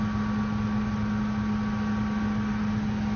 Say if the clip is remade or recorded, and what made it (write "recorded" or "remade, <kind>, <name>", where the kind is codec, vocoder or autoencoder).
recorded